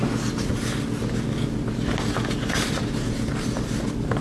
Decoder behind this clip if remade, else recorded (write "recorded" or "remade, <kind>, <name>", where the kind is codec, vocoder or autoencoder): recorded